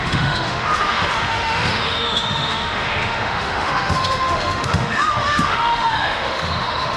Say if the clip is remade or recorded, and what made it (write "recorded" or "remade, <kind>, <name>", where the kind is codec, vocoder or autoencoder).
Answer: remade, autoencoder, DAC-VAE